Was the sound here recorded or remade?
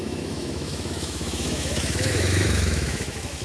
remade